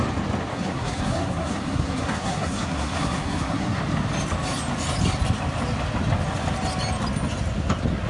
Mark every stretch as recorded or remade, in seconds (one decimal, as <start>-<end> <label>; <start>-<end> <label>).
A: 0.0-0.5 recorded; 0.5-3.8 remade; 3.8-8.1 recorded